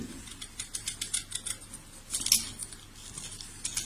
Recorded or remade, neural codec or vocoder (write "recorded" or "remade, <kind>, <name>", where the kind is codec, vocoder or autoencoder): recorded